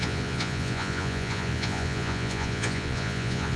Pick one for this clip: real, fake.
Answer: fake